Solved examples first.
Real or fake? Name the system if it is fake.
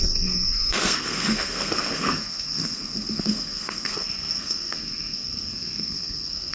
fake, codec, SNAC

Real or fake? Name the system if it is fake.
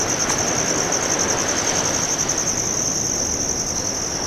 real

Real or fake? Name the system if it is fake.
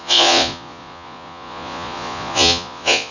fake, vocoder, Vocos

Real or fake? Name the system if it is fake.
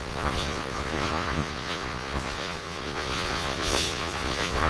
fake, vocoder, Vocos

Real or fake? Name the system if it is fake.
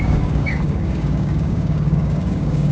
fake, codec, DAC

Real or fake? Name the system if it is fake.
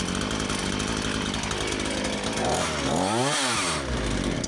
real